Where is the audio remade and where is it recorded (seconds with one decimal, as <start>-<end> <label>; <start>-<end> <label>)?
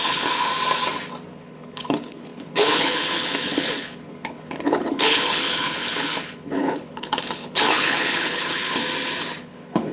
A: 0.0-0.5 remade; 0.5-1.3 recorded; 1.3-8.8 remade; 8.8-9.4 recorded; 9.4-9.9 remade